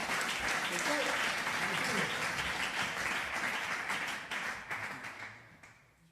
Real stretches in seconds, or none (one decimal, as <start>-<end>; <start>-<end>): 0.0-6.1